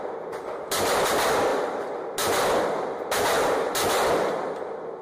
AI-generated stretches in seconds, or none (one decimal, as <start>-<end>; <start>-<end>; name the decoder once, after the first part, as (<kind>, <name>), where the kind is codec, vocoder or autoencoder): none